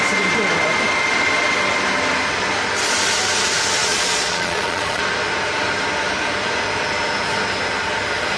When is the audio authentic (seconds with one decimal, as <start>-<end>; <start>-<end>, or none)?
0.0-3.8; 5.0-8.4